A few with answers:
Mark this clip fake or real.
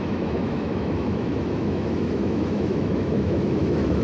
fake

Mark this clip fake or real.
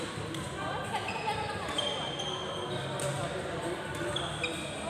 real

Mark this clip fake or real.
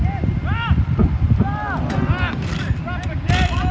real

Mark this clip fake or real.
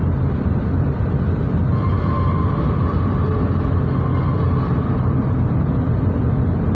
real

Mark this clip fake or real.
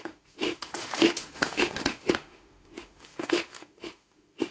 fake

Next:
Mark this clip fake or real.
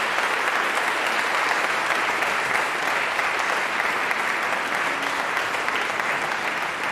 real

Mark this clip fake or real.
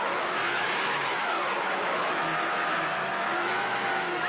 fake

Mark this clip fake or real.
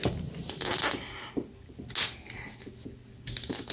real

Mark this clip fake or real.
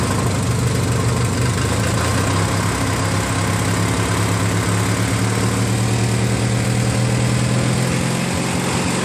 real